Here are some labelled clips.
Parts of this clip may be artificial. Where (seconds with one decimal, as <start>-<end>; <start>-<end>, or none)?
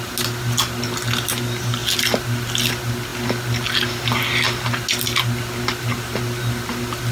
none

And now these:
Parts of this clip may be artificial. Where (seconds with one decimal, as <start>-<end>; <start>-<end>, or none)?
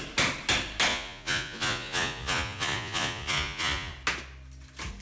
0.9-3.9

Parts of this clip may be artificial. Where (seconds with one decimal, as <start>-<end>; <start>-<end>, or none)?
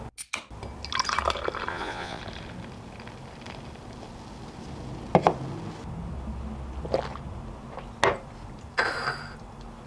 1.7-2.2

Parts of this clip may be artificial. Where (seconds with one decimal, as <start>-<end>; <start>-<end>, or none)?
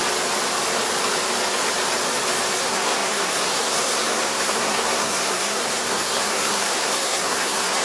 2.6-7.8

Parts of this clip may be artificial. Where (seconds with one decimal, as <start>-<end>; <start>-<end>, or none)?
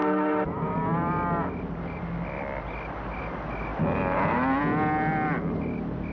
none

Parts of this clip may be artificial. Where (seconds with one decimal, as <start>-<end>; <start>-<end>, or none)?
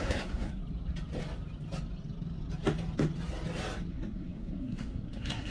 0.0-0.6; 3.9-5.5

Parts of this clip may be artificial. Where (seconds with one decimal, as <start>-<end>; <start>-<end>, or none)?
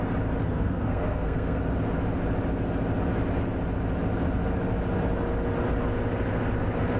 0.4-1.6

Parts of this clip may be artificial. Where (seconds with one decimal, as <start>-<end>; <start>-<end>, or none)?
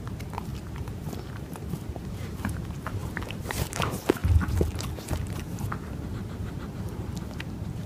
0.0-0.5; 1.3-4.2; 5.0-7.9